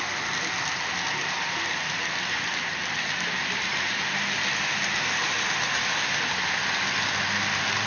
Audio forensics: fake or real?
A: real